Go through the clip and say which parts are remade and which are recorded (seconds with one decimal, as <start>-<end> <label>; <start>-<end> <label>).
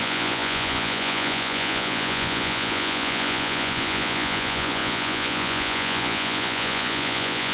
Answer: 0.0-7.5 remade